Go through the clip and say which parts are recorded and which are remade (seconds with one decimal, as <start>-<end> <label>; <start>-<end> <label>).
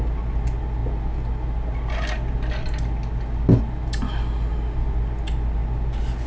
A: 0.0-6.3 recorded